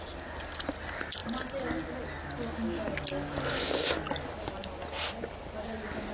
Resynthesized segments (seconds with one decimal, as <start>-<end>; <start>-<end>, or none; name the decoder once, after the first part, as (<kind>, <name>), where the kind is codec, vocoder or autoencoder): none